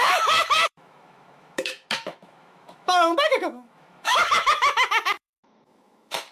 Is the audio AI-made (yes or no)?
yes